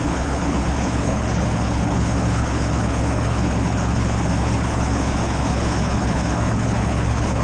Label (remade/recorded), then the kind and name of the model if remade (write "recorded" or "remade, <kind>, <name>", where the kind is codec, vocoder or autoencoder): remade, codec, HILCodec